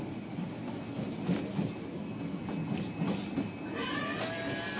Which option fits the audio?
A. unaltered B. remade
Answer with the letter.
A